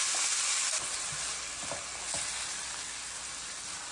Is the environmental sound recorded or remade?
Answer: recorded